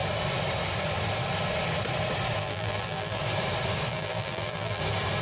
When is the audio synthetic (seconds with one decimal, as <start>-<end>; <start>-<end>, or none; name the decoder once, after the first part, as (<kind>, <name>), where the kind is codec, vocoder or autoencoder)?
2.4-3.2 (vocoder, BigVGAN v2); 3.9-4.8